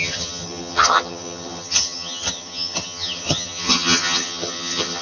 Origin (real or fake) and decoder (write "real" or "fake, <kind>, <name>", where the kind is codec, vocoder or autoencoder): fake, vocoder, HiFi-GAN